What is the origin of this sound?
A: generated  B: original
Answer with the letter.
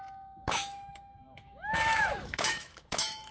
A